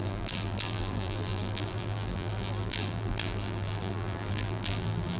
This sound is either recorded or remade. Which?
remade